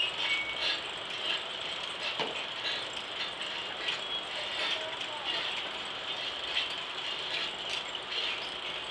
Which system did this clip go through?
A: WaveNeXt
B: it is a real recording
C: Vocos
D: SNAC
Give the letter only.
B